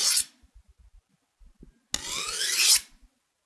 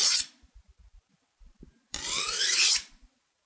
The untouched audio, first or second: first